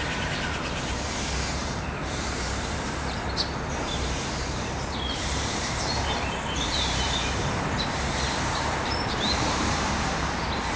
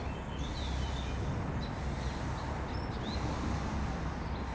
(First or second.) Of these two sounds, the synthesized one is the first